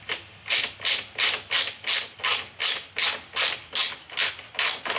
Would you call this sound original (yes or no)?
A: yes